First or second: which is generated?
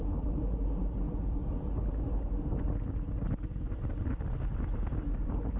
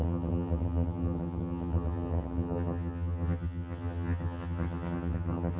second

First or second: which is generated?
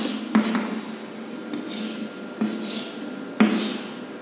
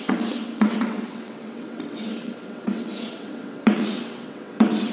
second